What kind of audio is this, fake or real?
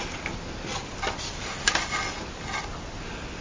real